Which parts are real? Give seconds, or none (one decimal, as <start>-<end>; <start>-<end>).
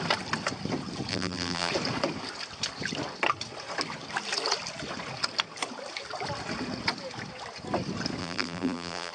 0.0-1.1; 1.7-8.2